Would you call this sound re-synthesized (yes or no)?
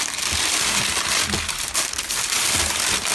no